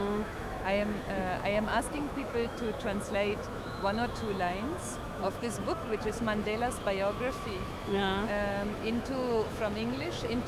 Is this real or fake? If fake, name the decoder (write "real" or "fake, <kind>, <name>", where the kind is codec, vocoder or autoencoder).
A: fake, autoencoder, DAC-VAE